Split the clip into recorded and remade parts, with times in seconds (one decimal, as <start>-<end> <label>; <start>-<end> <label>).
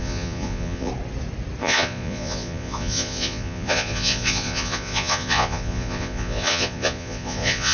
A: 0.0-0.9 remade; 0.9-1.6 recorded; 1.6-7.7 remade